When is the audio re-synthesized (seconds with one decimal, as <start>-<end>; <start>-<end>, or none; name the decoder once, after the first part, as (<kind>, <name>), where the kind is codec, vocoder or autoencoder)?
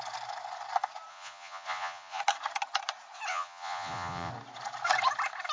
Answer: 1.1-2.2 (vocoder, Vocos); 3.3-4.3